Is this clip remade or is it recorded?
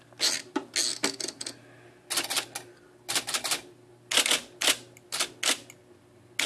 recorded